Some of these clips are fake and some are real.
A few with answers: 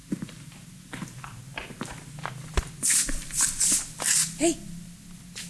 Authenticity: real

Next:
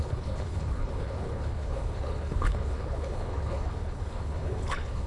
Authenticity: fake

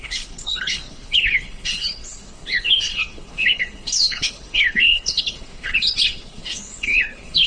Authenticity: fake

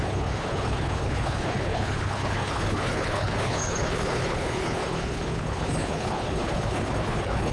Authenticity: fake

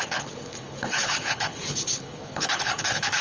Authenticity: fake